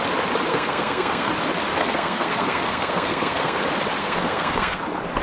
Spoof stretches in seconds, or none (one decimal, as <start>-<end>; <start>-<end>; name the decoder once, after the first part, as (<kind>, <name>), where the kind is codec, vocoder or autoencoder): 0.5-1.3 (codec, SNAC); 1.8-3.6; 4.0-4.8

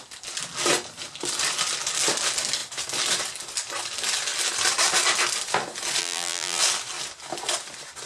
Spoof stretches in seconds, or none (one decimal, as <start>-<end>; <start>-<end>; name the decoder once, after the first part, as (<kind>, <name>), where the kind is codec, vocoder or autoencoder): 6.0-6.6 (vocoder, BigVGAN v2)

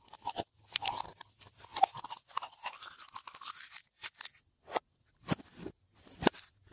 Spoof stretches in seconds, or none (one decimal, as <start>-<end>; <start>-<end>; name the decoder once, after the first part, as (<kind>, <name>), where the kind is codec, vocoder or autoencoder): none